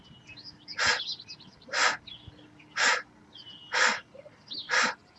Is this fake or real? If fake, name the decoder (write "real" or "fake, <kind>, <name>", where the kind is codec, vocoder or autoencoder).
real